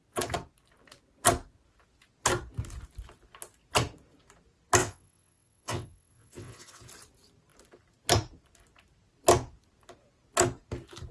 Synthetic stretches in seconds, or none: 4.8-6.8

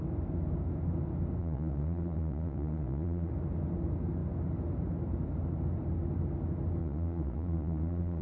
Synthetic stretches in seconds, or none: 1.4-3.3; 6.8-8.2

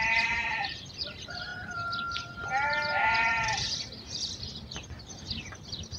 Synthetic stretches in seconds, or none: 0.0-6.0

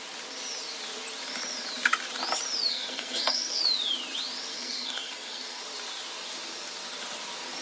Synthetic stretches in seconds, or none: 2.7-3.6; 4.5-5.6

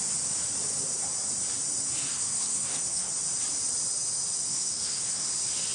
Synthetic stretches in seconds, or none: 2.1-3.1; 4.5-5.3

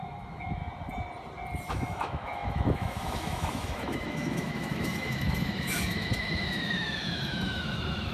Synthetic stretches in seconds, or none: 0.0-0.6; 1.7-8.1

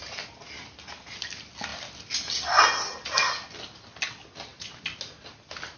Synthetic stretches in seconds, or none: none